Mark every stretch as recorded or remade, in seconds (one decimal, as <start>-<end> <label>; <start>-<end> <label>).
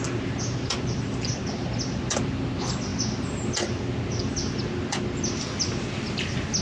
0.0-6.6 recorded